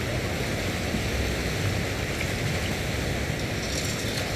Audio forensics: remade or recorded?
recorded